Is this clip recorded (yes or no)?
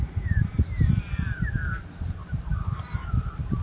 no